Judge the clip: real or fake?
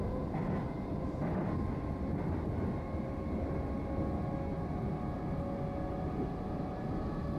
real